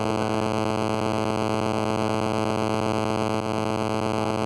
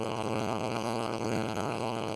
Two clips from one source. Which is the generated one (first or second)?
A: second